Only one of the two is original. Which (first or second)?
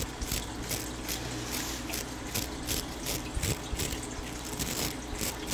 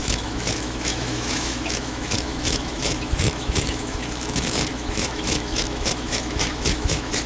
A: first